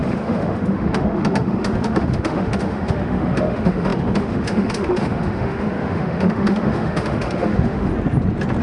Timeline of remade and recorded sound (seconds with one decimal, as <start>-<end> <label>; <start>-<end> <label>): 0.0-7.9 remade; 7.9-8.6 recorded